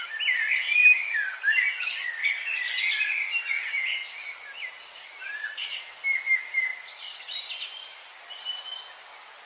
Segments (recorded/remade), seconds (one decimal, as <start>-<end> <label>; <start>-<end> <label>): 0.0-0.8 recorded; 0.8-1.8 remade; 1.8-6.7 recorded; 6.7-8.2 remade; 8.2-9.5 recorded